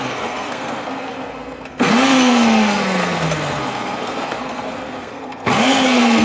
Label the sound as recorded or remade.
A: remade